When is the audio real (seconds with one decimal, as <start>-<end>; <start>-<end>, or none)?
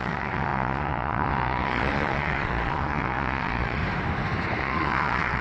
3.8-4.6